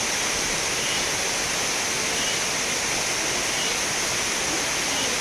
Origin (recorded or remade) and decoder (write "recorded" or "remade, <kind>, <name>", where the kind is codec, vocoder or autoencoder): recorded